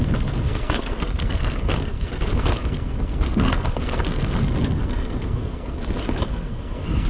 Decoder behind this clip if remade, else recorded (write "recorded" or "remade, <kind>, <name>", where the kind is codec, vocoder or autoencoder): remade, codec, SNAC